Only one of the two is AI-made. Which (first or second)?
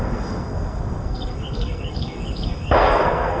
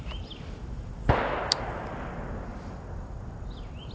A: first